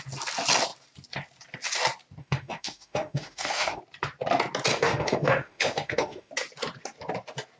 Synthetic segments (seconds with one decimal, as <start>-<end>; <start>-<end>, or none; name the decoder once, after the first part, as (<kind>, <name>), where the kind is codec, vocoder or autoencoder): 2.2-3.8 (autoencoder, DAC-VAE); 4.7-6.3